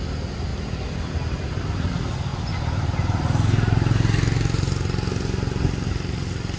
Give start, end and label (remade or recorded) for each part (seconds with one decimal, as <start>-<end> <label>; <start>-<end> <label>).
0.0-6.6 recorded